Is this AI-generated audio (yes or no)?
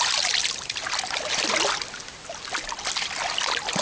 no